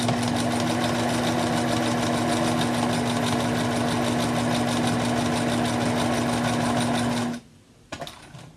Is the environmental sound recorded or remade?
recorded